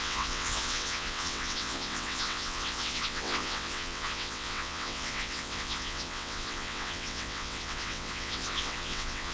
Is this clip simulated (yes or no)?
yes